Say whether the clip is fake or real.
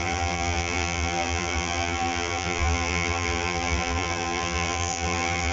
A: fake